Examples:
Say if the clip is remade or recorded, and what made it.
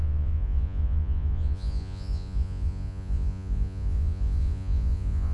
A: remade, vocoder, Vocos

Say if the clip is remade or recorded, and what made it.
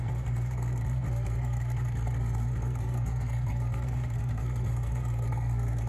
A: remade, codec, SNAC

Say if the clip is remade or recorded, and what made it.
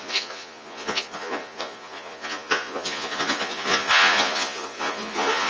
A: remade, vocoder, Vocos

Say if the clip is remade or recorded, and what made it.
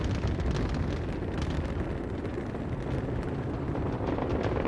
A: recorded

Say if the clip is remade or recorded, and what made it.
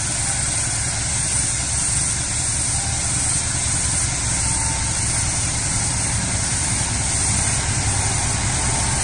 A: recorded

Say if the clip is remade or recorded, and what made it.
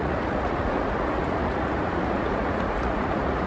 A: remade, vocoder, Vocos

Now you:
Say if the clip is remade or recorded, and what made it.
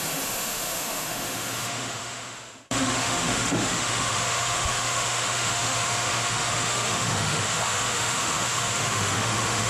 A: remade, autoencoder, DAC-VAE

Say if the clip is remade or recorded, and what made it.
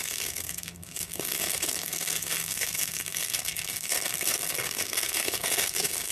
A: remade, codec, SNAC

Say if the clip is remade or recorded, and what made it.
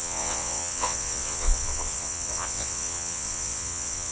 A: remade, vocoder, WaveNeXt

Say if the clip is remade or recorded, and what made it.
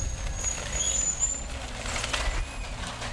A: recorded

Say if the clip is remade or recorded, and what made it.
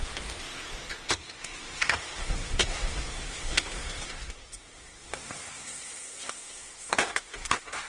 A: remade, codec, SNAC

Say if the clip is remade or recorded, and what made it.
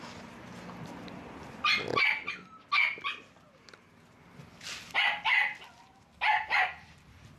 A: recorded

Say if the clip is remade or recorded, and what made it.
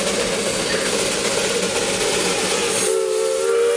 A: recorded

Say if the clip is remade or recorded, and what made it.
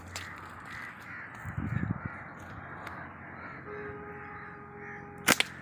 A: recorded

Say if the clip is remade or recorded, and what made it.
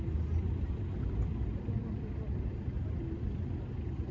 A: recorded